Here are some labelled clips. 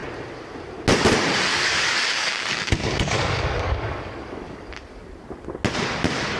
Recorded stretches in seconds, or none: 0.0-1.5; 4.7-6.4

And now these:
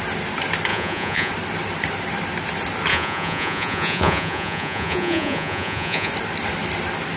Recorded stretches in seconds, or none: 0.0-0.7; 1.3-2.9; 6.1-7.2